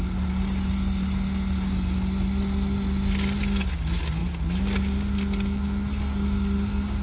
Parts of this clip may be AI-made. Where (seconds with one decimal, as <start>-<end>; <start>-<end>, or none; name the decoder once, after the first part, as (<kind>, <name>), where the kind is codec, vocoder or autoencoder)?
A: none